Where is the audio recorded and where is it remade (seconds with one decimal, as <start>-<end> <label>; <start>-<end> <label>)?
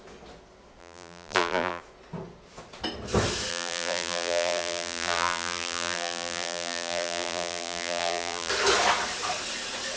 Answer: 0.0-0.8 recorded; 0.8-1.8 remade; 1.8-3.5 recorded; 3.5-8.5 remade; 8.5-10.0 recorded